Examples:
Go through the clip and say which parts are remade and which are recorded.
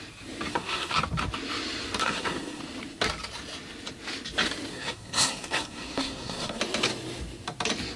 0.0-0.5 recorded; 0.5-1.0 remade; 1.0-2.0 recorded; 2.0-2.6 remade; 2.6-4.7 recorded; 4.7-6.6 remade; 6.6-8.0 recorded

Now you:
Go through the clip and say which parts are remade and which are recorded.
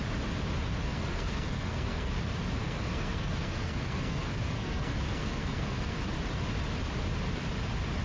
0.0-0.9 recorded; 0.9-2.1 remade; 2.1-2.6 recorded; 2.6-6.0 remade; 6.0-8.0 recorded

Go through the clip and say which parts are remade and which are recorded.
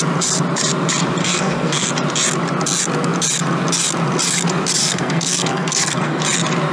0.0-1.2 recorded; 1.2-1.9 remade; 1.9-4.8 recorded; 4.8-6.2 remade; 6.2-6.7 recorded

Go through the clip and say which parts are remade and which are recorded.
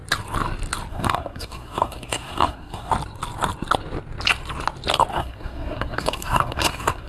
0.0-0.9 recorded; 0.9-2.9 remade; 2.9-5.1 recorded; 5.1-7.1 remade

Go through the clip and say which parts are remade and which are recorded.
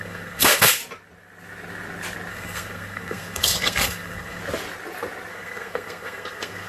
0.0-0.8 remade; 0.8-2.3 recorded; 2.3-4.4 remade; 4.4-5.3 recorded; 5.3-6.7 remade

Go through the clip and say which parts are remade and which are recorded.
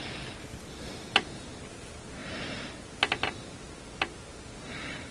0.0-5.1 recorded